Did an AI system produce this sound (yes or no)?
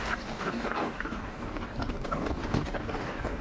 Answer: yes